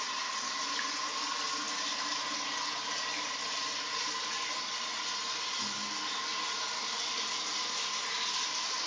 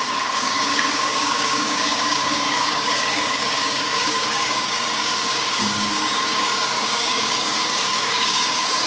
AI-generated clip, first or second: second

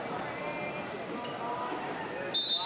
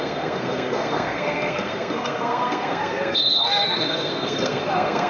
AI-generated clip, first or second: second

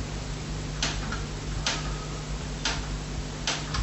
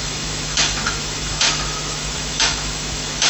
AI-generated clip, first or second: second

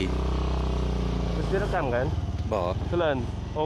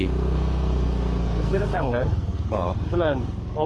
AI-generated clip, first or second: second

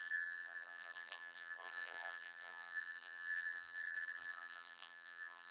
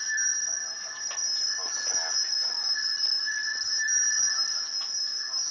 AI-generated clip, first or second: first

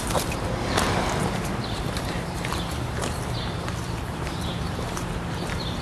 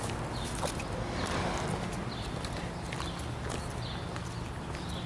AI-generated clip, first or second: first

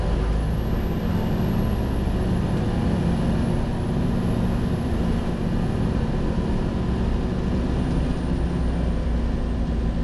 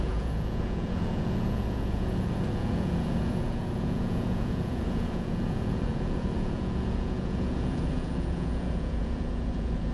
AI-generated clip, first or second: second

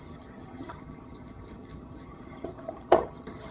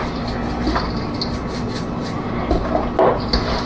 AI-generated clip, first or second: first